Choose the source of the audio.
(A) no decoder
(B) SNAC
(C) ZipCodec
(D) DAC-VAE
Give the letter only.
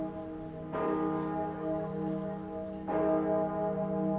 A